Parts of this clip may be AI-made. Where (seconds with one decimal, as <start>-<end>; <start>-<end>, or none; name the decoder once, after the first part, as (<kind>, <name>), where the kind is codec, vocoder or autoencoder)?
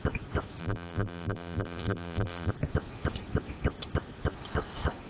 0.6-2.5 (vocoder, BigVGAN v2)